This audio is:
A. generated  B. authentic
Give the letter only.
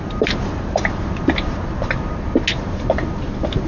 B